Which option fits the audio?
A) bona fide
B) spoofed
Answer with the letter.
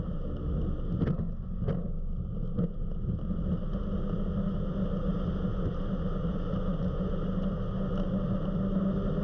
A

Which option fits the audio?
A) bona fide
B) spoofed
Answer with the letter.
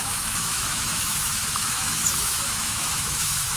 B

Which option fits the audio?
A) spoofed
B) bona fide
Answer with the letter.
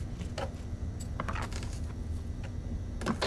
B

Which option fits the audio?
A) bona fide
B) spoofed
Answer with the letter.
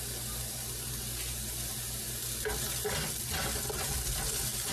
A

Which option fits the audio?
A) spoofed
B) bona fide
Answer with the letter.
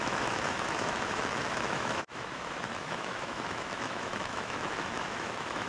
A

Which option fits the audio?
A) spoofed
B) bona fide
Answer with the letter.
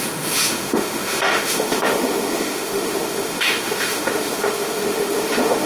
A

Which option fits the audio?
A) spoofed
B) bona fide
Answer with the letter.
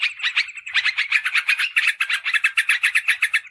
B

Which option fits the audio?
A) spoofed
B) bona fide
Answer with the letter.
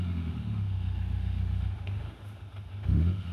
A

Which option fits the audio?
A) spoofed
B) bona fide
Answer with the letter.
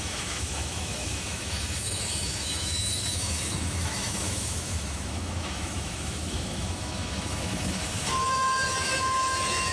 A